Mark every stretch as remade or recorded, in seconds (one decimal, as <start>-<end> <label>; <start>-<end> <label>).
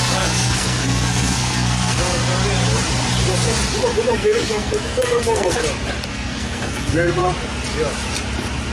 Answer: 0.0-2.2 remade; 2.2-4.1 recorded; 4.1-5.6 remade; 5.6-6.1 recorded; 6.1-7.2 remade; 7.2-8.7 recorded